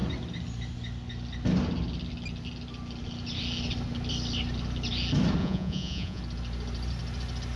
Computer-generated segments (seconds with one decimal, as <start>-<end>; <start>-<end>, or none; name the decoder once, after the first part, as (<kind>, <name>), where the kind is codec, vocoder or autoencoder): 5.4-6.2 (vocoder, Vocos)